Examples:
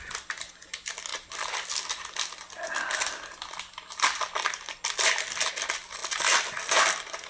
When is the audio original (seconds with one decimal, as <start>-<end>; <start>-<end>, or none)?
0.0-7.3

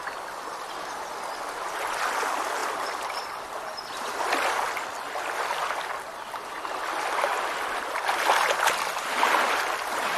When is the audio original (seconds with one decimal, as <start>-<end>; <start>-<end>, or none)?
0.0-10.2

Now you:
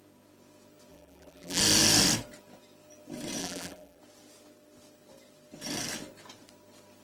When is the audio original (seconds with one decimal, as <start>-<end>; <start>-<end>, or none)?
0.0-0.9; 1.6-3.4; 4.0-7.0

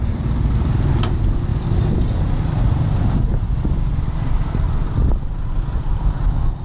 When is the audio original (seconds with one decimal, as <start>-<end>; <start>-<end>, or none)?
0.0-6.6